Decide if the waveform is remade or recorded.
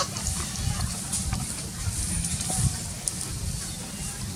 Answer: recorded